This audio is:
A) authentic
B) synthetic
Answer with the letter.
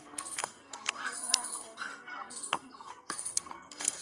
B